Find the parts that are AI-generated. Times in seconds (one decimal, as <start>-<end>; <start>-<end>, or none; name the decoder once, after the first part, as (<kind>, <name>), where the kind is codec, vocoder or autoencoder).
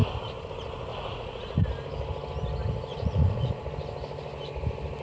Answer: 0.9-1.7 (vocoder, Vocos); 2.9-3.6